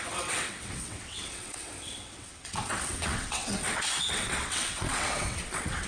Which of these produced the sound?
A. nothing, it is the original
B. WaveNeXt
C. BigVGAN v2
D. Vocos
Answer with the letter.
B